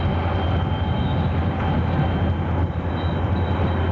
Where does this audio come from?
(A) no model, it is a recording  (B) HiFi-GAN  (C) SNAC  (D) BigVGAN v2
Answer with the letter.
A